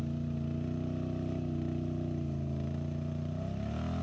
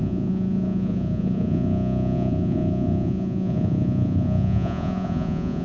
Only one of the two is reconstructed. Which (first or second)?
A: second